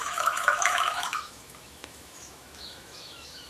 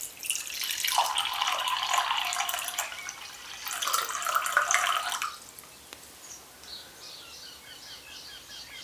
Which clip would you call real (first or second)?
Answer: second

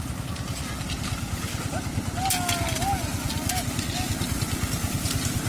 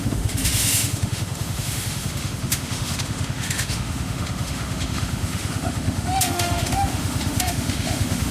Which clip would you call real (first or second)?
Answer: first